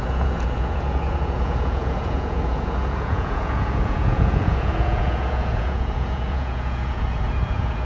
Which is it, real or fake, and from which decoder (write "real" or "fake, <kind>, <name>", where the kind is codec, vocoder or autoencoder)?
fake, vocoder, Vocos